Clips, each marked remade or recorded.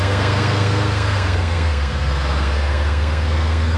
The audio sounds remade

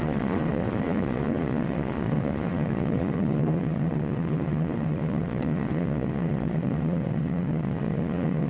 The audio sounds remade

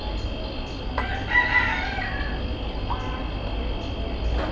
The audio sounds recorded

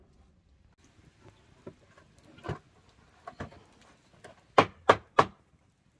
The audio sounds recorded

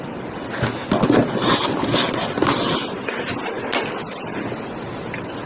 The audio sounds recorded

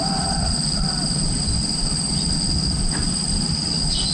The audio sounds recorded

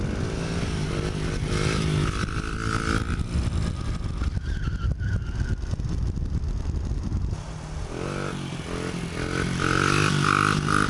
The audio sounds recorded